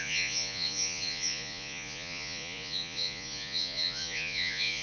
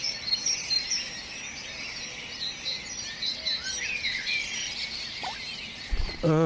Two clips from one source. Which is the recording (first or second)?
second